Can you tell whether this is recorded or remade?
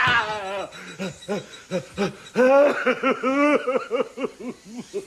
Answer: recorded